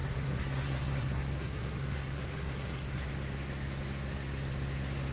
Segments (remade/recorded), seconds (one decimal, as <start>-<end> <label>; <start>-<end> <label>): 0.0-3.1 remade; 3.1-5.1 recorded